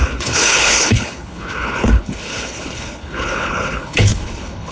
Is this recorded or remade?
remade